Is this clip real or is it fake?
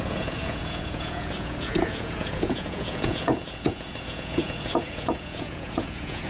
fake